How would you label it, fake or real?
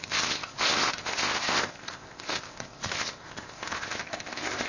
fake